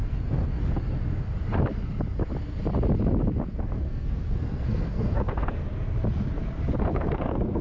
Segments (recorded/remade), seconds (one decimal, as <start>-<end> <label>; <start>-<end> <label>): 0.0-0.6 remade; 0.6-3.6 recorded; 3.6-5.6 remade; 5.6-6.8 recorded; 6.8-7.6 remade